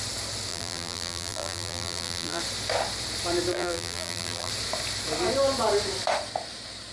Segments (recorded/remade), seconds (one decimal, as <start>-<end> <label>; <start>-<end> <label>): 0.0-0.5 recorded; 0.5-2.4 remade; 2.4-3.5 recorded; 3.5-4.5 remade; 4.5-6.9 recorded